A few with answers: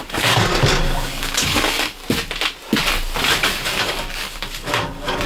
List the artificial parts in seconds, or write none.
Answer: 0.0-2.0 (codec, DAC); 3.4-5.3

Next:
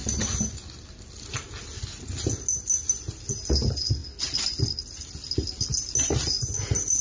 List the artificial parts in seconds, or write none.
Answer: none